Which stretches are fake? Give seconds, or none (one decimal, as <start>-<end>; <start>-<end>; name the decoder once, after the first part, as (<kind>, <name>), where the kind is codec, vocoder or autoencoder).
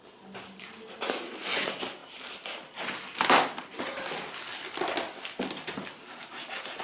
none